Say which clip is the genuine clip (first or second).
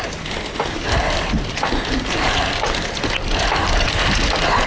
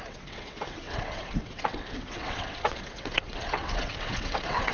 first